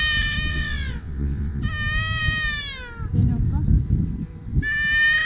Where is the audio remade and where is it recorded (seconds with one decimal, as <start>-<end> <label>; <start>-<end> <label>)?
0.0-0.5 recorded; 0.5-1.6 remade; 1.6-5.3 recorded